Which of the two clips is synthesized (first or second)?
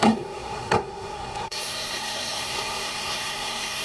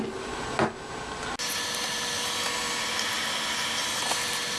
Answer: first